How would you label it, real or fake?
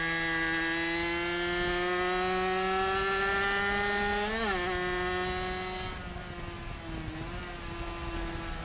real